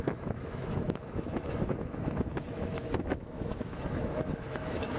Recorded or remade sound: remade